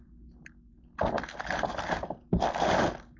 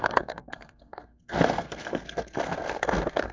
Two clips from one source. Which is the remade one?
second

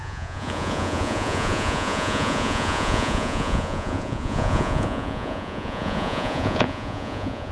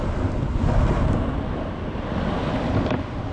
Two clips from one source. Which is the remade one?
first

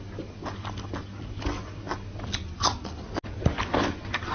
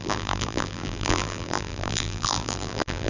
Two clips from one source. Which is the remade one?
second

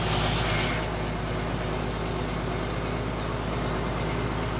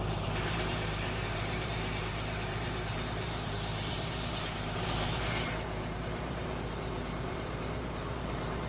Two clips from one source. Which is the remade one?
second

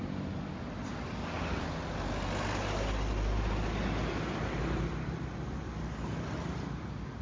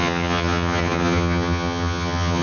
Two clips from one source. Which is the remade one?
second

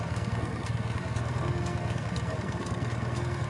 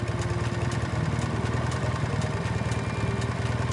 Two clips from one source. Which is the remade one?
first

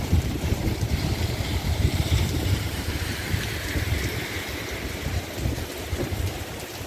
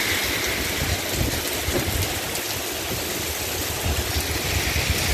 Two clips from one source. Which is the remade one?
first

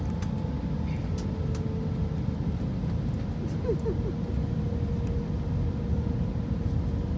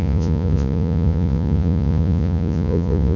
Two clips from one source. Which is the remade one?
second